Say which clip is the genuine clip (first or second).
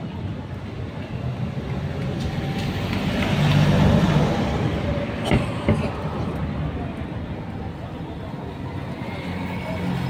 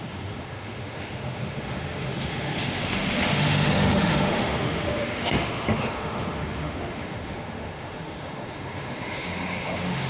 first